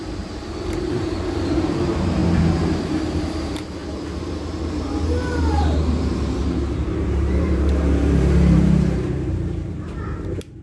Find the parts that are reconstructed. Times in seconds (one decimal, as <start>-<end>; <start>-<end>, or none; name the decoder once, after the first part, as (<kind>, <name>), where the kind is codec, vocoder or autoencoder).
0.0-3.8 (vocoder, BigVGAN v2); 6.7-10.6